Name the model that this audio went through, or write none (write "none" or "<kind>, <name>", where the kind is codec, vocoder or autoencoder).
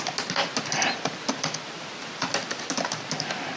none